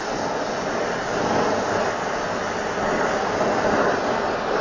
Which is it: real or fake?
real